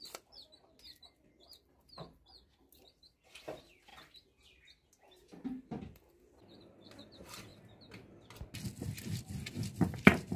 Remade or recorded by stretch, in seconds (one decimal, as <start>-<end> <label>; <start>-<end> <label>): 0.0-3.9 remade; 3.9-5.8 recorded; 5.8-7.5 remade; 7.5-9.3 recorded; 9.3-10.4 remade